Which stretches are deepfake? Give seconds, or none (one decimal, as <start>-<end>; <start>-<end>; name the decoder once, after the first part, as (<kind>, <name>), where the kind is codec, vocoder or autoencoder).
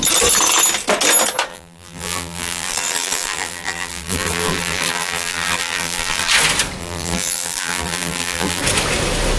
1.5-6.3 (vocoder, BigVGAN v2); 6.8-8.6